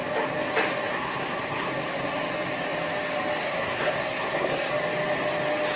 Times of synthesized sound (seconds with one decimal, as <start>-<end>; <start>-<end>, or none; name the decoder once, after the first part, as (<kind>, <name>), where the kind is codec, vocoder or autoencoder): 0.9-1.7 (codec, SNAC); 3.4-4.7